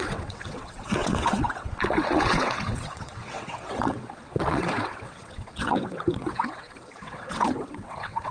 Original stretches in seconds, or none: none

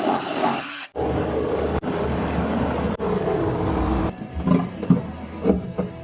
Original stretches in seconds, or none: 0.0-0.4; 4.0-6.0

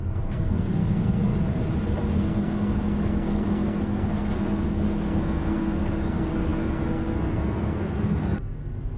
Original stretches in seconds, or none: 1.3-2.1

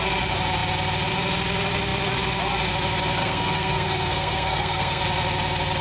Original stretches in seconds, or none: 0.0-3.2; 5.0-5.8

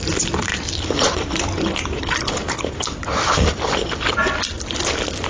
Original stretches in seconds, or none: none

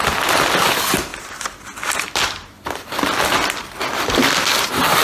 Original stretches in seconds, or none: 0.0-5.0

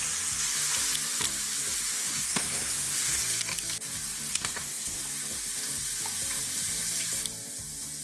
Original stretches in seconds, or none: 0.0-2.0; 3.2-4.3; 5.0-8.0